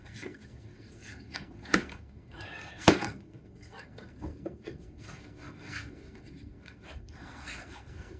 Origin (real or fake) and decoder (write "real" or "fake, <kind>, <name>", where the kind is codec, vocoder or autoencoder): fake, codec, SNAC